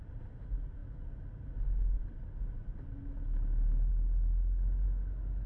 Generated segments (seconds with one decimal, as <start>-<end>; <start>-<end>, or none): none